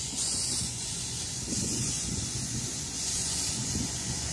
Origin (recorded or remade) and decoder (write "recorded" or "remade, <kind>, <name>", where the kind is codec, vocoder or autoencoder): remade, vocoder, Vocos